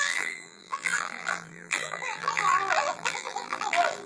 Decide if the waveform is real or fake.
fake